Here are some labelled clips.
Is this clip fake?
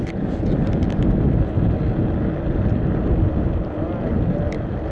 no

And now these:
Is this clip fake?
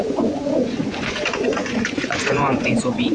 yes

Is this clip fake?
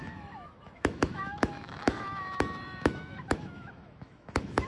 yes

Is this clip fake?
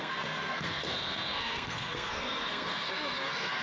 yes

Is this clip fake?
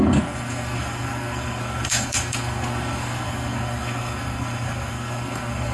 yes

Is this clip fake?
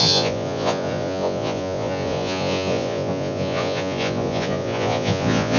yes